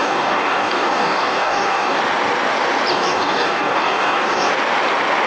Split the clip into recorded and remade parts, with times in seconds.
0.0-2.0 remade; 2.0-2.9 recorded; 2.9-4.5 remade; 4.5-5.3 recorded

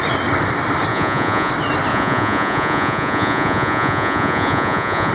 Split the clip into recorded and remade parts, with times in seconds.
0.0-0.9 recorded; 0.9-1.5 remade; 1.5-1.9 recorded; 1.9-5.1 remade

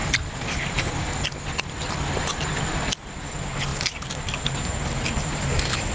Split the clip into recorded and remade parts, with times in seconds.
0.0-3.7 recorded; 3.7-5.9 remade